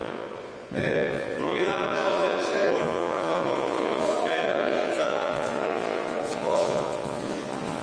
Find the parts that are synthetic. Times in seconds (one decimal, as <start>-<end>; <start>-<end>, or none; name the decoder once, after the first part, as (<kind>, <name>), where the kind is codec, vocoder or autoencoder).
0.0-7.8 (vocoder, Vocos)